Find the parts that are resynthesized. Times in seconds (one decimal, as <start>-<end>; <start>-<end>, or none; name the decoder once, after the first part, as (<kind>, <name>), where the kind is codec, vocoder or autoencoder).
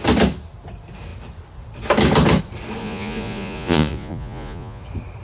2.8-4.8 (vocoder, Vocos)